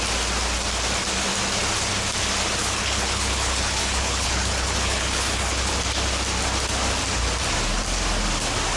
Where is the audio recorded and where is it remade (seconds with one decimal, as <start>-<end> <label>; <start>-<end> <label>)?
0.0-2.6 recorded; 2.6-5.7 remade; 5.7-8.8 recorded